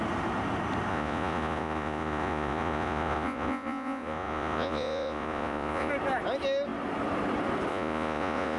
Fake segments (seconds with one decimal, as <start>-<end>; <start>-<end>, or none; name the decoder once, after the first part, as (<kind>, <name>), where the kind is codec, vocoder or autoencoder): 0.9-5.9 (vocoder, Vocos); 7.7-8.6